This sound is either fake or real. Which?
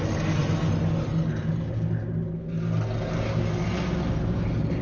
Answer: real